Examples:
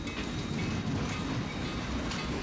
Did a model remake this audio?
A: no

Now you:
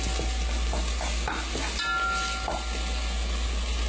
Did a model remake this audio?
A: no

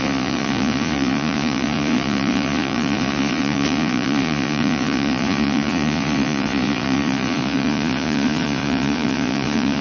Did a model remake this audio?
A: yes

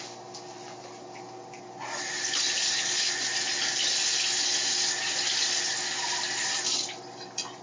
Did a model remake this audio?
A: no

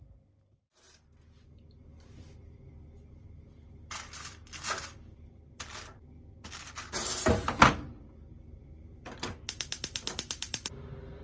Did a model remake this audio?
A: no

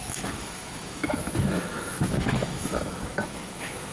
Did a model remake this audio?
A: yes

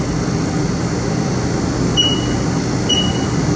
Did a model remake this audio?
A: no